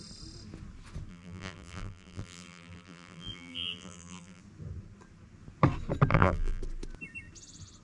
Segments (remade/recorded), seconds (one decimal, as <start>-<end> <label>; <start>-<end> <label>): 0.0-1.1 recorded; 1.1-4.4 remade; 4.4-6.1 recorded; 6.1-6.6 remade; 6.6-7.8 recorded